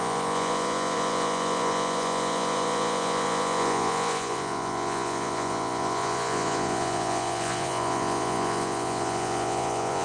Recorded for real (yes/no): no